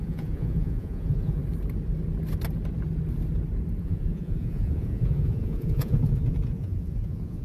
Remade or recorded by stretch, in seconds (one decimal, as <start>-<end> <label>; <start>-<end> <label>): 0.0-1.4 remade; 1.4-3.8 recorded; 3.8-7.4 remade